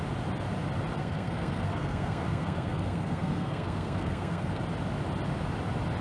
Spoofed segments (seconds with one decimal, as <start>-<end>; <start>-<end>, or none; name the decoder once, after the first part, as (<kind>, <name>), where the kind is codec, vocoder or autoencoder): 1.0-4.6 (codec, SNAC)